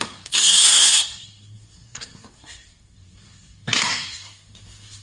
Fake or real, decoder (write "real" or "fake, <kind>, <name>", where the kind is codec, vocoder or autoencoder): fake, codec, SNAC